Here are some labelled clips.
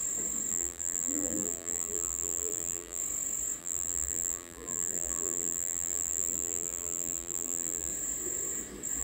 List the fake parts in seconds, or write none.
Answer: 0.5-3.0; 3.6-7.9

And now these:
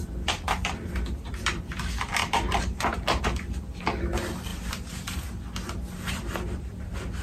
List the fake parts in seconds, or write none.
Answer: 2.2-3.2

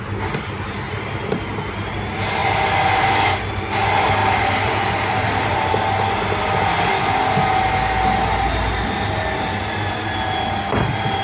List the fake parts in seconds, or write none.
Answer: 2.4-3.0; 4.2-5.7

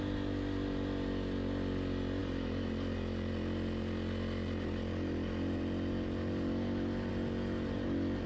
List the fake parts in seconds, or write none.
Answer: none

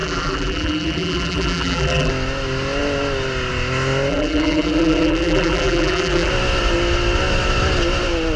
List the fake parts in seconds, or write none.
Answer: 0.0-2.1; 4.1-6.3

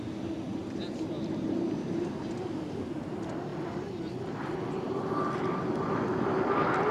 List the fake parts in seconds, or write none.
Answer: 0.6-2.0

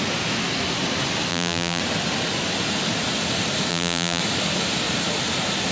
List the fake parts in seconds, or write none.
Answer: 1.3-1.8; 3.7-4.2

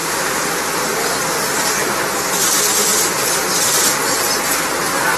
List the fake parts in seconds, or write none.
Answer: 0.0-1.1; 2.9-4.4